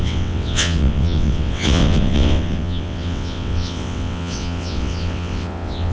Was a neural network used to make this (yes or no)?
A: yes